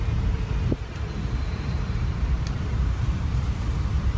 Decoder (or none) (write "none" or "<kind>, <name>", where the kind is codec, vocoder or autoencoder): vocoder, BigVGAN v2